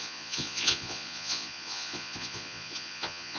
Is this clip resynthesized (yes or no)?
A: yes